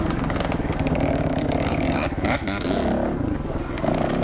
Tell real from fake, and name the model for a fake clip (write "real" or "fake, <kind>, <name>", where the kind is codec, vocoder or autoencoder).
fake, codec, DAC